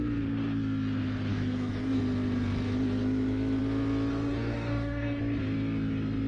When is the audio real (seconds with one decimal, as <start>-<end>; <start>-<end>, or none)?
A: 0.0-1.3; 2.0-4.1; 5.2-6.3